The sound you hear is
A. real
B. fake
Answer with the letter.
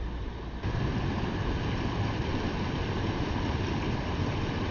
A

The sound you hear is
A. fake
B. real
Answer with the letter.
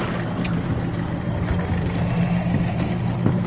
B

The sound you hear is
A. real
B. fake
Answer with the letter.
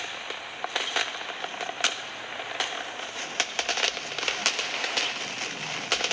A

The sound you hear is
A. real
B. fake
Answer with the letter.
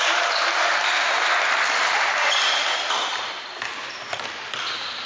A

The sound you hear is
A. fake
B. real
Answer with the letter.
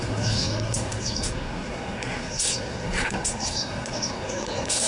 A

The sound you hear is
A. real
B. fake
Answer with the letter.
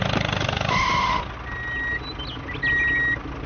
A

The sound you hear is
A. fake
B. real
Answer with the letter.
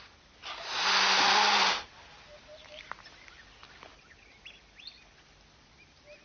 B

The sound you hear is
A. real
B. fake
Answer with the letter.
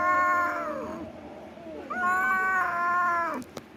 A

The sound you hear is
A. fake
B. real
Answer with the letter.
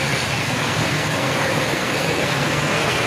A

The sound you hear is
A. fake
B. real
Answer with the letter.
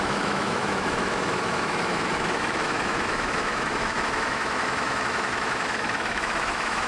A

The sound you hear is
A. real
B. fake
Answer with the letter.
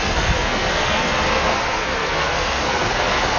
B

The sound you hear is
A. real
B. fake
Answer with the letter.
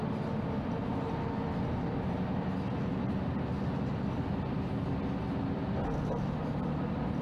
A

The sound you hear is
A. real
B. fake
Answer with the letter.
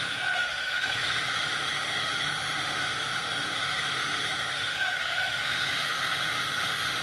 B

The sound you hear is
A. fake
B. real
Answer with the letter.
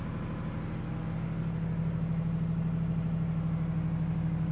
B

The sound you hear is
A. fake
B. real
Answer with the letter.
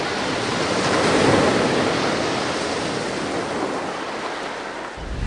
B